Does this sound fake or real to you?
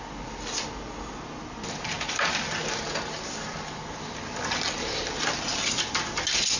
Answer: real